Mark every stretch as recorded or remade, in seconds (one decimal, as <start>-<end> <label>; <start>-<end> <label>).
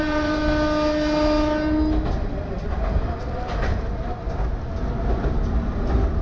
0.0-0.4 remade; 0.4-3.2 recorded; 3.2-3.7 remade; 3.7-5.8 recorded; 5.8-6.2 remade